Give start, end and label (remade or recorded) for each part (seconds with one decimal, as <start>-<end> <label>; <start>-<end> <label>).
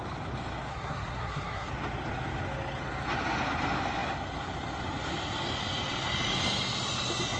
0.0-0.7 recorded; 0.7-1.7 remade; 1.7-7.4 recorded